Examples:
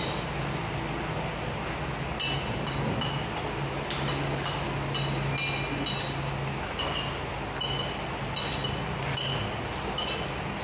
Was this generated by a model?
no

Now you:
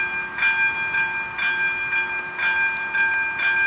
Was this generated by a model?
no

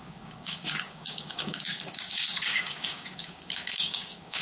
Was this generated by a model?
yes